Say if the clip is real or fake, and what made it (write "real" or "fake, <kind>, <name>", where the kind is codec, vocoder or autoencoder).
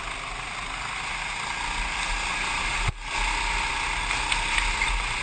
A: real